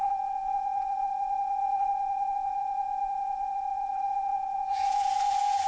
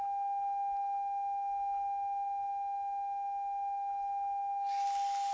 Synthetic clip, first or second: first